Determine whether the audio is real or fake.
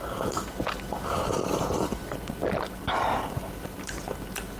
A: real